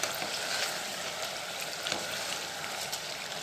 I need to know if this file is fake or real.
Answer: real